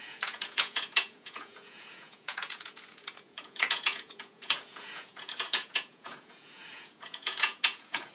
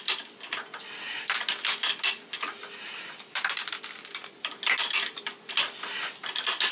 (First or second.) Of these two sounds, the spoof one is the first